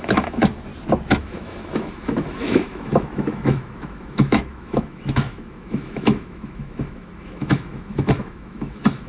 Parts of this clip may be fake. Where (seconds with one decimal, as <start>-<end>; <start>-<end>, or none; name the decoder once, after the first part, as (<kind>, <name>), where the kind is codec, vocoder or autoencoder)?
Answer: 0.0-0.7 (autoencoder, DAC-VAE); 1.2-9.1